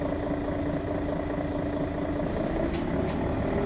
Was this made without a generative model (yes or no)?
yes